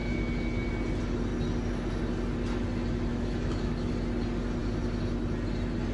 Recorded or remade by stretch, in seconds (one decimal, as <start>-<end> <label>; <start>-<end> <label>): 0.0-0.7 remade; 0.7-3.1 recorded; 3.1-3.9 remade; 3.9-5.9 recorded